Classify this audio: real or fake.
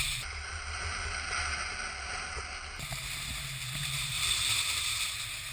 real